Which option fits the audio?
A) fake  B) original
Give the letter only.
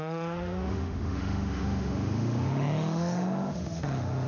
A